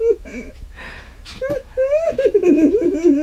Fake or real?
fake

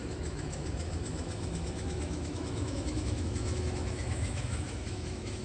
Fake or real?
fake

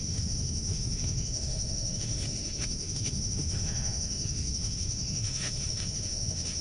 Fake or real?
fake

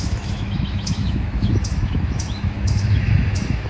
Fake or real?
fake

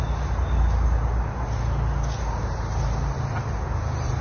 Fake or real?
real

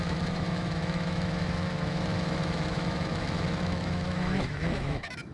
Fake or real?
fake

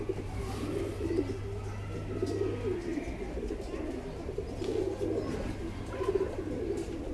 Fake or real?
real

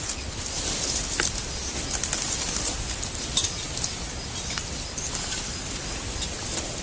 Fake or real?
real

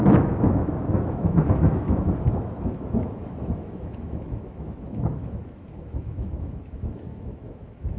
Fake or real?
fake